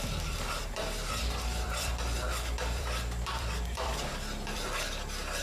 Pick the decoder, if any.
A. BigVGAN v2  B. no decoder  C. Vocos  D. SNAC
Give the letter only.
A